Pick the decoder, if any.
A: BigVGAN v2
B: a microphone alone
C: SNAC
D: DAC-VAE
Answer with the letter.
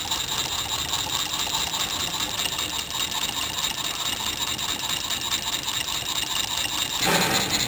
B